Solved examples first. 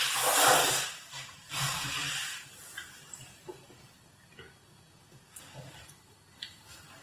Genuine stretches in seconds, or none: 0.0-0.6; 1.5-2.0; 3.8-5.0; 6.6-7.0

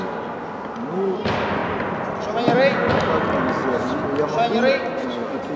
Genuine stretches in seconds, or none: 0.0-5.6

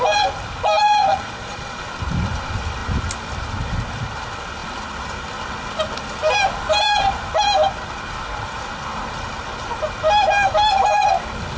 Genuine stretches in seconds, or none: 0.0-1.1; 1.8-11.6

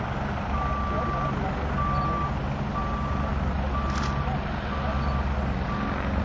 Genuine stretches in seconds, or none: 0.0-6.2